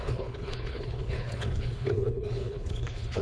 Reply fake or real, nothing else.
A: fake